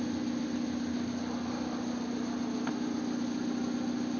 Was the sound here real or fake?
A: real